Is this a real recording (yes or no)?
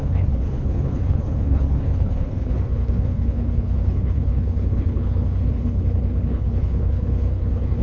no